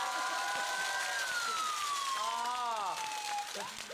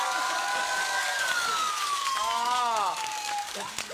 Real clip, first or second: first